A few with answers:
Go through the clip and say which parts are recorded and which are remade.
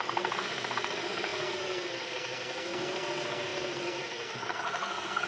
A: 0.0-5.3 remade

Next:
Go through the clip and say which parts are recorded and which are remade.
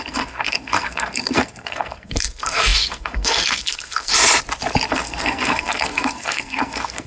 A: 0.0-4.1 remade; 4.1-4.9 recorded; 4.9-7.1 remade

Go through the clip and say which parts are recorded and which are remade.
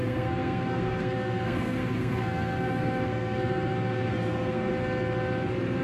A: 0.0-4.7 remade; 4.7-5.8 recorded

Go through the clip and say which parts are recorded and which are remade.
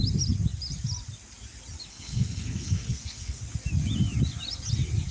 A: 0.0-1.9 recorded; 1.9-3.4 remade; 3.4-5.1 recorded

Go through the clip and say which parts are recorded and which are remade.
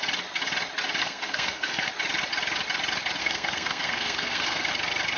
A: 0.0-1.0 recorded; 1.0-1.9 remade; 1.9-3.2 recorded; 3.2-4.7 remade; 4.7-5.2 recorded